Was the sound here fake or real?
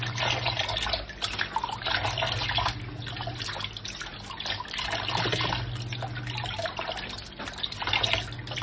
real